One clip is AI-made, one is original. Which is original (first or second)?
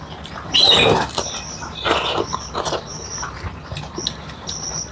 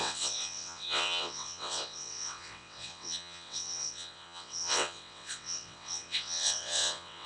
first